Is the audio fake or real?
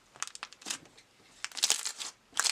real